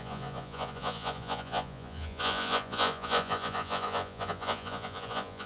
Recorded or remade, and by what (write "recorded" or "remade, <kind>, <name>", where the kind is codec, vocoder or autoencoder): remade, vocoder, Vocos